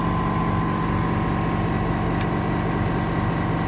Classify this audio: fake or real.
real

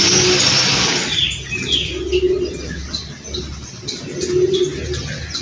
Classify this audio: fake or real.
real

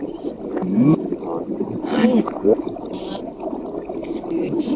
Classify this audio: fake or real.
real